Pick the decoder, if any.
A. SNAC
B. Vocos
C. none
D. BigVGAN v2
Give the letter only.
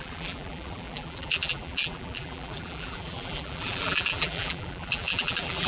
D